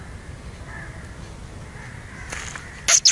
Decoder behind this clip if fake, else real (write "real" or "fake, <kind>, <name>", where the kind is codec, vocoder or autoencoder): real